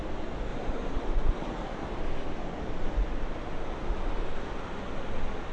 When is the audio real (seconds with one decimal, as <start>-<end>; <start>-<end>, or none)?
0.0-0.5; 2.0-5.5